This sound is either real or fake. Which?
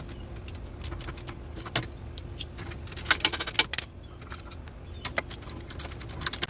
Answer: real